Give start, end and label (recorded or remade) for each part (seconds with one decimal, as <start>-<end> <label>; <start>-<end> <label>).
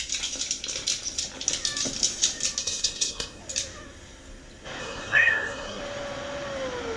0.0-2.6 recorded; 2.6-3.4 remade; 3.4-4.8 recorded; 4.8-5.8 remade; 5.8-7.0 recorded